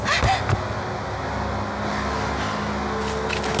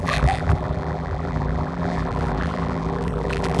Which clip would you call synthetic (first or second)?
second